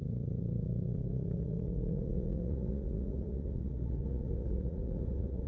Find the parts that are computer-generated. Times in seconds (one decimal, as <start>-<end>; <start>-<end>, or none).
0.0-5.5